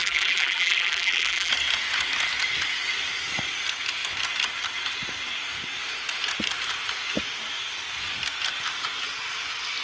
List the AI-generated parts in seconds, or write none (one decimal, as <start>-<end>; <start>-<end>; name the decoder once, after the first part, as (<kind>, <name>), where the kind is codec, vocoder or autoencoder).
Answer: 0.0-1.5 (vocoder, BigVGAN v2)

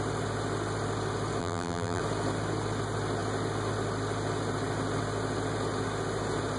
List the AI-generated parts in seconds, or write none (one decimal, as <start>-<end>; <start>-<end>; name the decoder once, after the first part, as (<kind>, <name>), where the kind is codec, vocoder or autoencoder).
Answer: 1.4-2.0 (vocoder, BigVGAN v2)

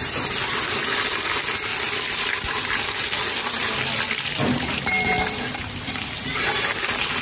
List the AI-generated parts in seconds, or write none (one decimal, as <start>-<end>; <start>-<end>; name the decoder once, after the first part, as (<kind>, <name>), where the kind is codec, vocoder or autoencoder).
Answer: 1.7-6.0 (vocoder, BigVGAN v2)

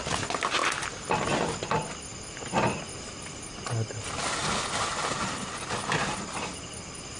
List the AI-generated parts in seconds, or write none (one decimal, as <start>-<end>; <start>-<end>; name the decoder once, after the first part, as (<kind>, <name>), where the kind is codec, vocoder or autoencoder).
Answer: 0.6-1.6 (vocoder, BigVGAN v2); 4.4-6.2

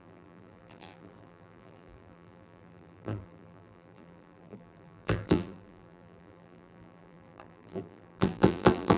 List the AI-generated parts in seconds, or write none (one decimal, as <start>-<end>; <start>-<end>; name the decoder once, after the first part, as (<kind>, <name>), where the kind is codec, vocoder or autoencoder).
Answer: 0.0-9.0 (vocoder, BigVGAN v2)

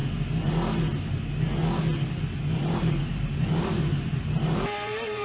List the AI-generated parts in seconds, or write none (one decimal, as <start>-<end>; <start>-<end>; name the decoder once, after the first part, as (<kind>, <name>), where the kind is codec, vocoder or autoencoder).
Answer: 2.7-5.2 (vocoder, BigVGAN v2)